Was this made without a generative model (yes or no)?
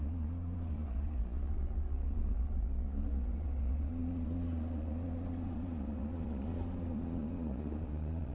no